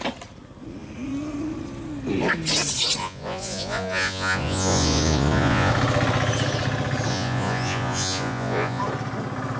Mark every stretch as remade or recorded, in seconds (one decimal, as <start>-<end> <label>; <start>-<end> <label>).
0.0-3.0 recorded; 3.0-5.7 remade; 5.7-7.1 recorded; 7.1-8.8 remade; 8.8-9.6 recorded